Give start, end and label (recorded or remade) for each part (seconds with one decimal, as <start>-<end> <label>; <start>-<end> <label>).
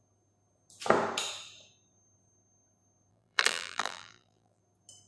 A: 0.0-3.1 recorded; 3.1-4.6 remade; 4.6-5.1 recorded